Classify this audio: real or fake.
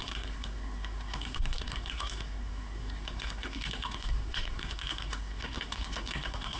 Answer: fake